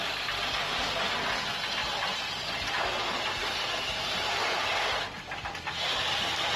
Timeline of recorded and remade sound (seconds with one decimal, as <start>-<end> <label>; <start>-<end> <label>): 0.0-6.6 recorded